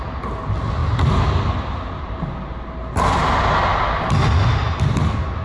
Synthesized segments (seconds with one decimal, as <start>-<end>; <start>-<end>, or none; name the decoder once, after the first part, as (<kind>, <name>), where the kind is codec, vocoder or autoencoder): none